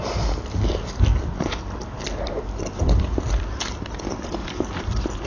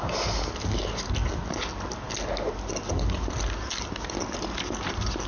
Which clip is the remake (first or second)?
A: first